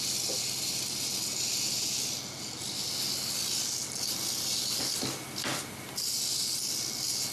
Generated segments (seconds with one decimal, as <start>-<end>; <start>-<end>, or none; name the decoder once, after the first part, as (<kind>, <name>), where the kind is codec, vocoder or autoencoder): none